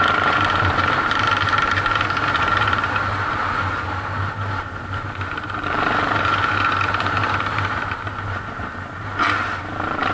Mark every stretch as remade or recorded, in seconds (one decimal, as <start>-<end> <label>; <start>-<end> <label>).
0.0-10.1 remade